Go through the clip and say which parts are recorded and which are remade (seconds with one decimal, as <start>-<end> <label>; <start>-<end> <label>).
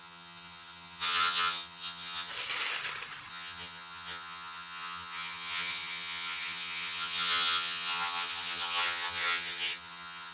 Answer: 0.0-2.3 remade; 2.3-3.3 recorded; 3.3-10.3 remade